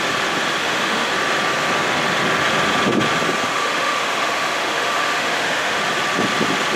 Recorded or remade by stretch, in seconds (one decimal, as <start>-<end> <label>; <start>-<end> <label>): 0.0-0.6 recorded; 0.6-1.1 remade; 1.1-3.5 recorded; 3.5-5.8 remade; 5.8-6.8 recorded